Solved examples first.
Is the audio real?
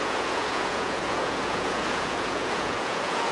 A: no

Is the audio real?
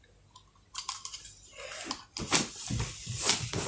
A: yes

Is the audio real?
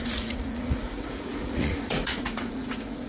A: no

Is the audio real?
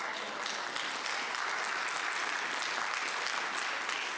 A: yes